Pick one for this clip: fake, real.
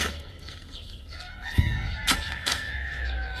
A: fake